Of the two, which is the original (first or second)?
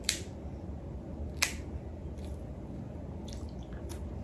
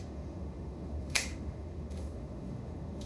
first